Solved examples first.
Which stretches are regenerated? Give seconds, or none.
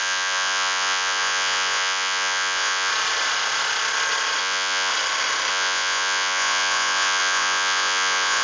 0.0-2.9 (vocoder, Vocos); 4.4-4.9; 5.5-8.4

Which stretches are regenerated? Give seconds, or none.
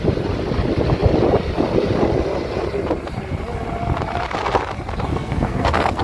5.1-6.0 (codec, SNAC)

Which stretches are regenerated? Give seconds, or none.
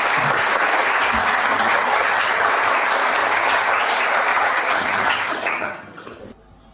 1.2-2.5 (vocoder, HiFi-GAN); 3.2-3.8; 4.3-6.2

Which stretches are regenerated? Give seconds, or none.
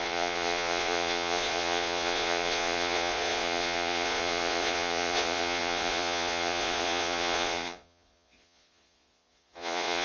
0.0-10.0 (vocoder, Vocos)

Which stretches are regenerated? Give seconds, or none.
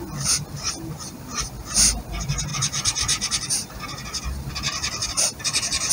2.5-3.7 (vocoder, BigVGAN v2); 5.0-5.9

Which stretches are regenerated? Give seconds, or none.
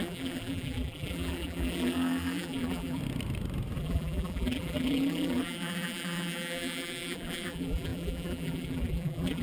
0.0-3.0 (vocoder, BigVGAN v2); 3.8-9.4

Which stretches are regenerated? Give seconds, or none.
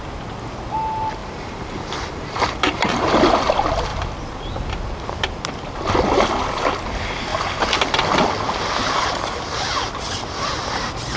1.2-3.2 (vocoder, BigVGAN v2)